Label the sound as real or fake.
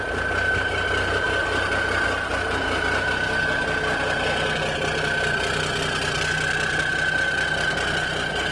real